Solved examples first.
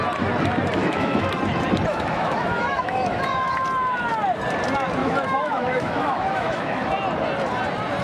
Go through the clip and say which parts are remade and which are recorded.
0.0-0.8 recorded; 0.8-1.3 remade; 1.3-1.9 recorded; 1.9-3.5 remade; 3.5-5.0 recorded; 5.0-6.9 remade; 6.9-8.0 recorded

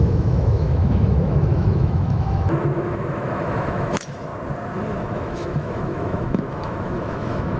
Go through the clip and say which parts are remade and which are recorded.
0.0-4.3 remade; 4.3-5.0 recorded; 5.0-7.6 remade

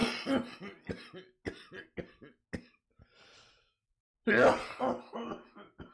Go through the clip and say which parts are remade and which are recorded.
0.0-3.5 recorded; 3.5-4.1 remade; 4.1-5.0 recorded; 5.0-5.9 remade

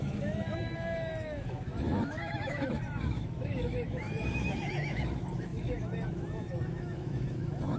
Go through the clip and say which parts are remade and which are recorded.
0.0-7.8 remade

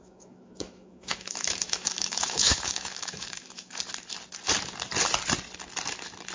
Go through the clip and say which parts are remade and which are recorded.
0.0-3.8 remade; 3.8-6.3 recorded

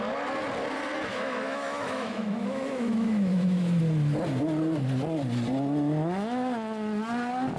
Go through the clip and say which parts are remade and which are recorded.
0.0-1.1 recorded; 1.1-3.8 remade; 3.8-7.6 recorded

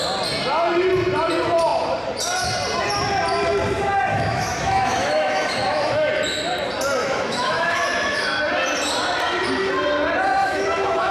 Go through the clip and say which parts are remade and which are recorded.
0.0-4.1 recorded; 4.1-6.1 remade; 6.1-7.0 recorded; 7.0-8.4 remade; 8.4-10.4 recorded; 10.4-11.1 remade